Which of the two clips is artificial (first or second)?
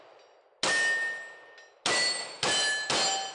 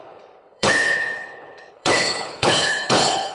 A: second